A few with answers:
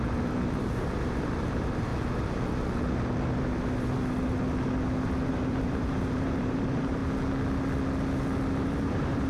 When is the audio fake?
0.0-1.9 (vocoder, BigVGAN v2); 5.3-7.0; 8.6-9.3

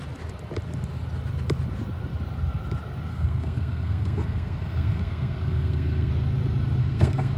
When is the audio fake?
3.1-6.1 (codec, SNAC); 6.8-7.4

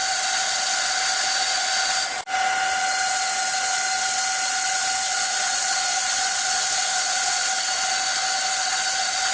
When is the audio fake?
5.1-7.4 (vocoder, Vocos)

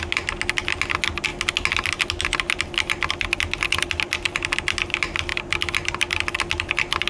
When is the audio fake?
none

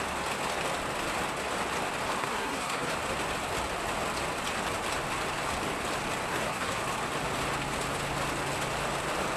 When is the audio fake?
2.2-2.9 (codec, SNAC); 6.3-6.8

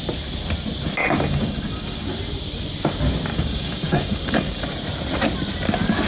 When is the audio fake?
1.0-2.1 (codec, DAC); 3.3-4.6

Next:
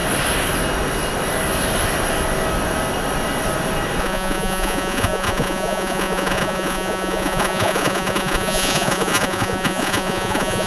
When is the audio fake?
4.0-10.7 (vocoder, Vocos)

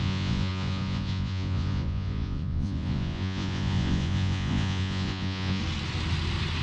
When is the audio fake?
0.0-5.6 (vocoder, Vocos)